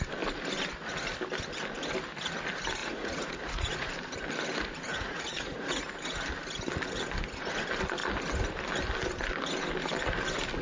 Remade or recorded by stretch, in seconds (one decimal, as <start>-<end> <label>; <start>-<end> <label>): 0.0-2.8 recorded; 2.8-3.9 remade; 3.9-4.9 recorded; 4.9-5.9 remade; 5.9-10.6 recorded